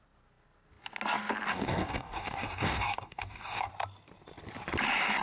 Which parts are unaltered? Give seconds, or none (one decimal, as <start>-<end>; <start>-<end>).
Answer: 0.0-1.5; 3.7-5.2